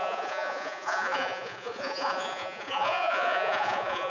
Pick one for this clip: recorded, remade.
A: remade